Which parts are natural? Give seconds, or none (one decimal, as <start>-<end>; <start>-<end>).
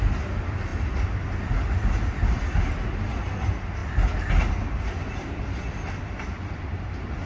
0.0-7.3